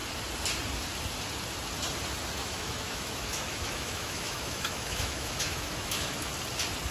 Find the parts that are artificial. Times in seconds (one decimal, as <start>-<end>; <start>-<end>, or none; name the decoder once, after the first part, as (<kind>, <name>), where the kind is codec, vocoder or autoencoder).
2.4-6.3 (autoencoder, DAC-VAE)